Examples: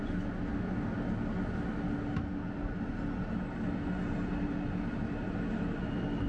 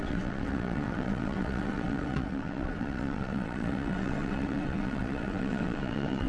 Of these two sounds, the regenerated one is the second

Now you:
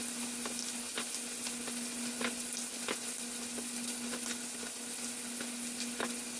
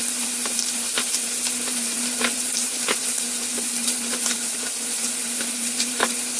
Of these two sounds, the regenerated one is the second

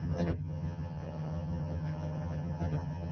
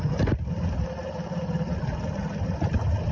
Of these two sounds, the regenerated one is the first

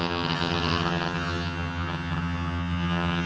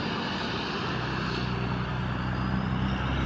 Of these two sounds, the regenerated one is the first